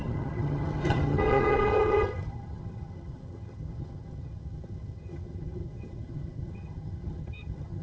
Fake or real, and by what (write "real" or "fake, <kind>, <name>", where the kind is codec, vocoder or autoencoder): fake, vocoder, HiFi-GAN